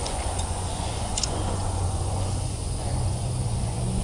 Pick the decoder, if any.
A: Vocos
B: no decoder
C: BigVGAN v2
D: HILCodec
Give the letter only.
A